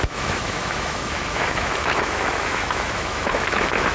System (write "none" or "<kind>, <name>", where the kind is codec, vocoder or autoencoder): autoencoder, DAC-VAE